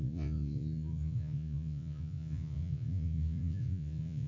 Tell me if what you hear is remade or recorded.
remade